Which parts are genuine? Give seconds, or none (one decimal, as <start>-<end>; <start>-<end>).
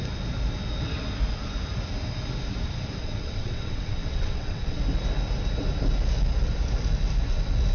0.0-3.0; 4.8-7.7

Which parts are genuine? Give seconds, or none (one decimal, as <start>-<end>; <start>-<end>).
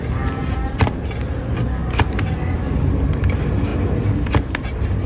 0.0-5.1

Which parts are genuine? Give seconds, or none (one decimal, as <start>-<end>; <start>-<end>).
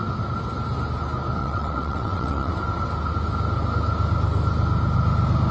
0.0-1.4; 2.5-5.5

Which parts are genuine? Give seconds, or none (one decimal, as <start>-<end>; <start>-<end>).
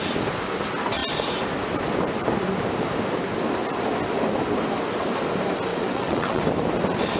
0.0-5.7; 6.4-7.2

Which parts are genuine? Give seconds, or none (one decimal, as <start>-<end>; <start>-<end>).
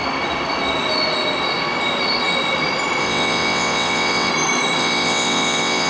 0.0-3.0; 4.3-4.8